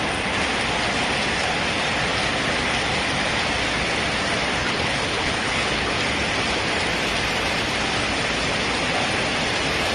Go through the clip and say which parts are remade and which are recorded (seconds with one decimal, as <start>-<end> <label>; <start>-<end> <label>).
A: 0.0-4.6 recorded; 4.6-5.9 remade; 5.9-9.9 recorded